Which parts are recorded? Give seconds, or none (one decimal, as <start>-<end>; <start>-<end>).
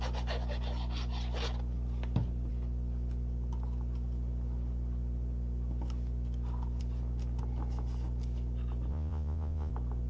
0.0-8.9; 9.7-10.1